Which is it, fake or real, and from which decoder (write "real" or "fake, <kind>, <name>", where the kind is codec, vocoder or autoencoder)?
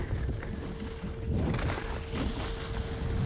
real